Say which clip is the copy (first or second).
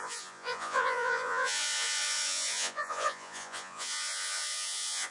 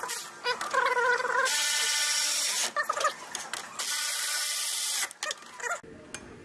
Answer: first